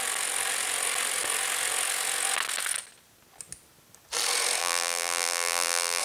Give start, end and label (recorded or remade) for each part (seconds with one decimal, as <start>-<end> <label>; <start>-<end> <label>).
0.0-4.6 recorded; 4.6-6.0 remade